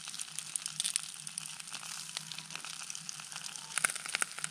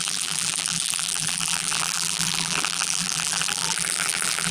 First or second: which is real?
first